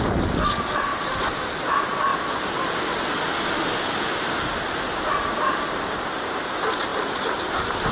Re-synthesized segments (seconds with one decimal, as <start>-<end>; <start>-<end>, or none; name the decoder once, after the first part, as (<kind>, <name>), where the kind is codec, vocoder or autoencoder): none